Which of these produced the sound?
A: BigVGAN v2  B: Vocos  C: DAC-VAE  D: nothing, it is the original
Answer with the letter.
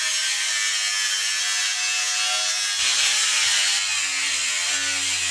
D